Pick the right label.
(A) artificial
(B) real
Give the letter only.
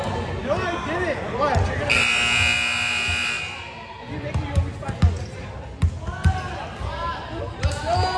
B